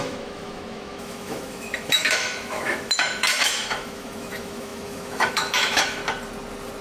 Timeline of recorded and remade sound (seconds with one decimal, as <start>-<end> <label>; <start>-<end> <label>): 0.0-6.0 remade; 6.0-6.8 recorded